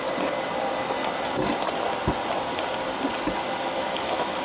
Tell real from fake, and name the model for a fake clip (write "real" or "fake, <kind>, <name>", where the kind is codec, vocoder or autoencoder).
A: real